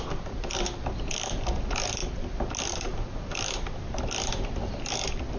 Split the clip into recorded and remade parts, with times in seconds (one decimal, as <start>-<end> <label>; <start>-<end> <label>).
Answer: 0.0-5.4 recorded